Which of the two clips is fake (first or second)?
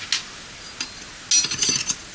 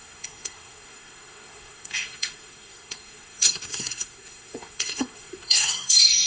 second